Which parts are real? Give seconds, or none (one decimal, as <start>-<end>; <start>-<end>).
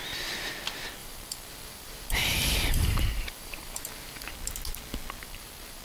0.0-1.0; 4.3-5.2